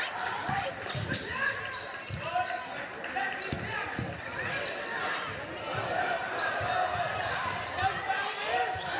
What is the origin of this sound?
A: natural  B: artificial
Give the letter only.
A